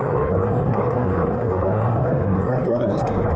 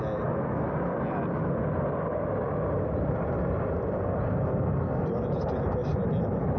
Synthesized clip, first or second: first